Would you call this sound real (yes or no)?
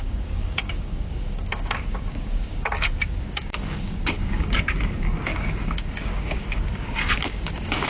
no